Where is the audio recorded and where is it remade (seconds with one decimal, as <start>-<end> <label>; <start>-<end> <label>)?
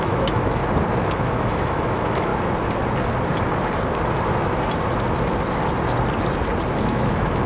0.0-0.6 remade; 0.6-1.1 recorded; 1.1-2.3 remade; 2.3-6.8 recorded; 6.8-7.5 remade